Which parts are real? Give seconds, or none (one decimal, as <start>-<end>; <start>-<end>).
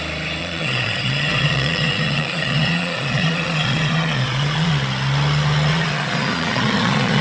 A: 0.0-0.4; 4.7-5.7